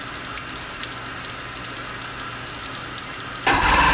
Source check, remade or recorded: recorded